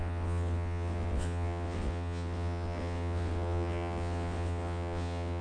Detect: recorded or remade remade